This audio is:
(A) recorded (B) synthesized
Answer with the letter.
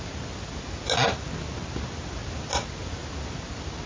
A